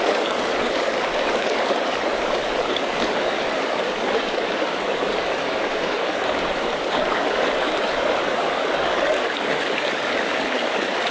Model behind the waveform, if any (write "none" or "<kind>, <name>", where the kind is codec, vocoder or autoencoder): codec, DAC